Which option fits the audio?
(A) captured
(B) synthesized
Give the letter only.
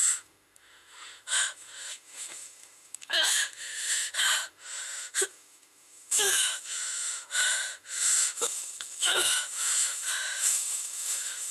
B